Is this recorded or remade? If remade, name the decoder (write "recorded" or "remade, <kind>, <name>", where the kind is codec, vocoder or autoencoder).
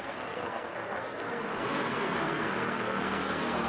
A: remade, codec, SNAC